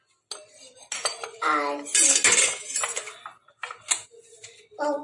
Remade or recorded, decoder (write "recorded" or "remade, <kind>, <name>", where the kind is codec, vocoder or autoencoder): recorded